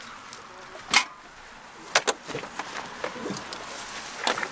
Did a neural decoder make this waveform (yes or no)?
no